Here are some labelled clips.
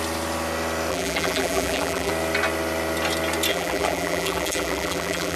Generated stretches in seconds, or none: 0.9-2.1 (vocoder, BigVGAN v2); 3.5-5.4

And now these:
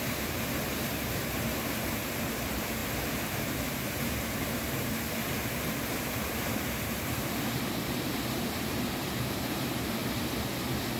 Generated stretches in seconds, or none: 0.0-10.0 (vocoder, BigVGAN v2)

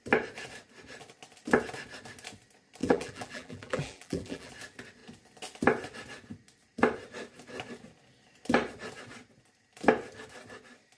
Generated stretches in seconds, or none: 2.8-4.5 (vocoder, BigVGAN v2)

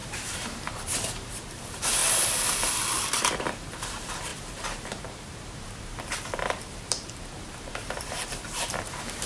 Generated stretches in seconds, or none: 0.0-2.0 (vocoder, BigVGAN v2); 3.4-9.3

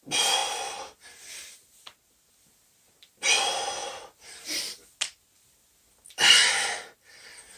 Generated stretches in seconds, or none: 3.8-4.6 (vocoder, BigVGAN v2)

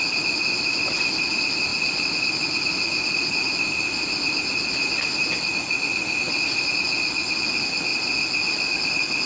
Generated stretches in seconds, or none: none

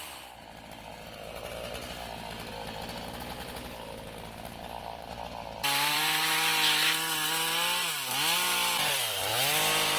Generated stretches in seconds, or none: 0.0-0.9 (vocoder, BigVGAN v2); 4.8-6.5; 7.9-10.0

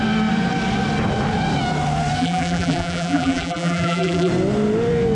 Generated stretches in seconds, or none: 2.2-4.3 (vocoder, BigVGAN v2)